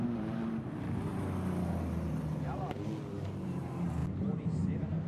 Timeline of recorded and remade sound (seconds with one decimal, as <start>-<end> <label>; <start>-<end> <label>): 0.0-1.1 remade; 1.1-3.1 recorded; 3.1-5.1 remade